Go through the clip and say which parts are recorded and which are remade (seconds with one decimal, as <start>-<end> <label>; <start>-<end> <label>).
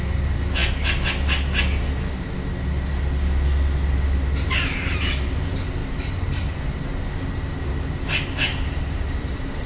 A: 0.0-8.5 recorded; 8.5-9.7 remade